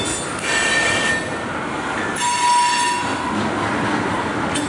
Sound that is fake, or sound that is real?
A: real